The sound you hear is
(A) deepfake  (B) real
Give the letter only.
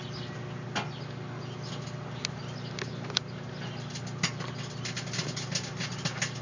B